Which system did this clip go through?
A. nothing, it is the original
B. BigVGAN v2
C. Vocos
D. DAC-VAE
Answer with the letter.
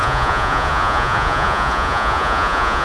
C